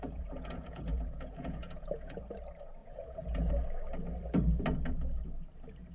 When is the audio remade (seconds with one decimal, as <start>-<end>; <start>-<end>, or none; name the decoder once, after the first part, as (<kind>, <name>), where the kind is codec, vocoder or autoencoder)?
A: 0.0-2.2 (vocoder, Vocos); 2.8-3.5